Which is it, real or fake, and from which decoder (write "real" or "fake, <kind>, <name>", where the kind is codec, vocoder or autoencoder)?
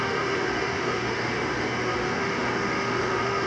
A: fake, autoencoder, DAC-VAE